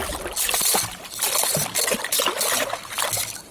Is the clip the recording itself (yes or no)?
yes